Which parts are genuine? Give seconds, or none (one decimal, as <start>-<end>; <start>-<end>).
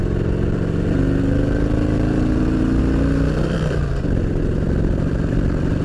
0.0-2.8